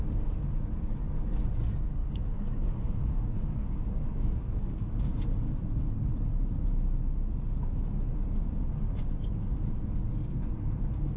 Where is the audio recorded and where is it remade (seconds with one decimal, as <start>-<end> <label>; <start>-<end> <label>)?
0.0-2.0 recorded; 2.0-5.0 remade; 5.0-11.2 recorded